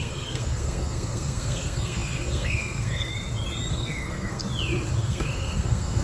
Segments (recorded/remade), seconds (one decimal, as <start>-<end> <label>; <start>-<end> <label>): 0.0-3.1 remade; 3.1-3.7 recorded; 3.7-4.4 remade; 4.4-5.0 recorded; 5.0-6.0 remade